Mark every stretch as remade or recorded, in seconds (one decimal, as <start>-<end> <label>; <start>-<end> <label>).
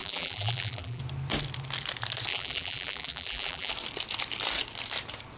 0.0-1.0 remade; 1.0-2.3 recorded; 2.3-3.7 remade; 3.7-5.4 recorded